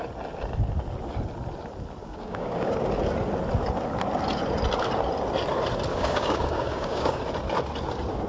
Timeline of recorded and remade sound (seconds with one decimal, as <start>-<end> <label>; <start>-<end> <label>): 0.0-2.0 recorded; 2.0-2.7 remade; 2.7-5.9 recorded; 5.9-7.2 remade; 7.2-8.3 recorded